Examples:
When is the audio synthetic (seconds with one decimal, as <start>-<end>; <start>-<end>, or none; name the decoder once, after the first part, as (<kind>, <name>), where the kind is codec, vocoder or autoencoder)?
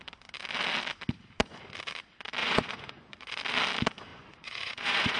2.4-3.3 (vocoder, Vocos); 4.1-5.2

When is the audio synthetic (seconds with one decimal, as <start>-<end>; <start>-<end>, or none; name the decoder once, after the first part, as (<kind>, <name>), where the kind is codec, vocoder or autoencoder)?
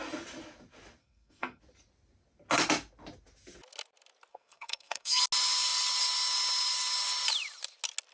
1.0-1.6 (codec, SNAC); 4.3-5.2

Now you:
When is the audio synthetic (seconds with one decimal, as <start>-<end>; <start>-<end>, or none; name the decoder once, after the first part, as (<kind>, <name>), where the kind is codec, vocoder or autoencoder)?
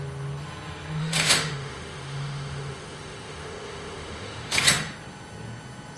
1.0-4.6 (autoencoder, DAC-VAE)